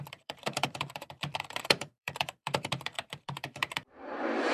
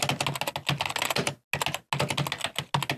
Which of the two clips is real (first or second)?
second